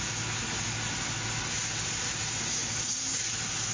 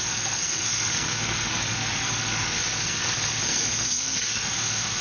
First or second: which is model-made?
second